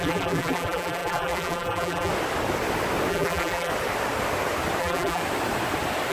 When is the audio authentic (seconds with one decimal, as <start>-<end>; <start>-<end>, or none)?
2.1-3.1; 3.7-4.8; 5.2-6.1